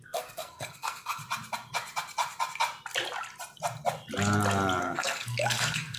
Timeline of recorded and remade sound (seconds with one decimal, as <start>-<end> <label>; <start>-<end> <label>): 0.0-1.2 remade; 1.2-4.8 recorded; 4.8-6.0 remade